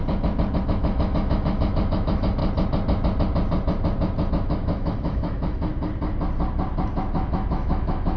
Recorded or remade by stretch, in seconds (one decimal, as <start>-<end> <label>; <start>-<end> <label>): 0.0-0.6 recorded; 0.6-2.4 remade; 2.4-4.3 recorded; 4.3-5.7 remade; 5.7-7.1 recorded; 7.1-8.2 remade